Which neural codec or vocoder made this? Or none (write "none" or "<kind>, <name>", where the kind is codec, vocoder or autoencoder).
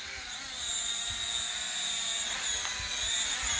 none